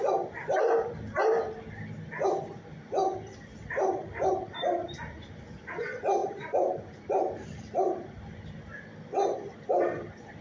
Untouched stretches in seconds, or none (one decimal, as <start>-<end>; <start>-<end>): 0.0-6.2; 8.2-10.4